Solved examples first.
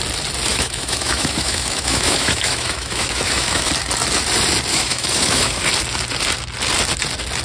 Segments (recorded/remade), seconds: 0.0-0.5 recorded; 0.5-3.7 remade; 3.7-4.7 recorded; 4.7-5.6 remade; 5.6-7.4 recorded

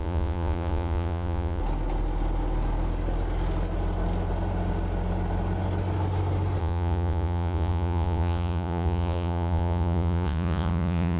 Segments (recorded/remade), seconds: 0.0-1.6 remade; 1.6-6.6 recorded; 6.6-11.2 remade

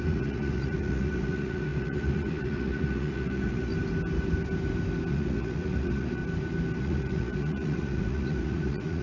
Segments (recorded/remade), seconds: 0.0-3.7 remade; 3.7-5.1 recorded; 5.1-6.2 remade; 6.2-6.8 recorded; 6.8-9.0 remade

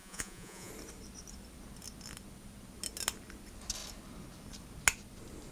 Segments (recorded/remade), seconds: 0.0-0.7 remade; 0.7-5.5 recorded